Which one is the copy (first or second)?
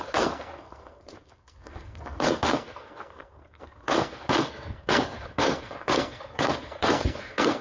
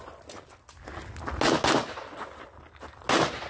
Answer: first